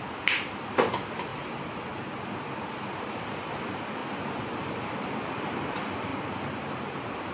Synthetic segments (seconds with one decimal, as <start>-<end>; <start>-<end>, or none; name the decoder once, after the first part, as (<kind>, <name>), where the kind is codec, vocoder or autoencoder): 0.0-1.3 (vocoder, BigVGAN v2); 3.0-4.0; 4.6-6.1; 6.8-7.3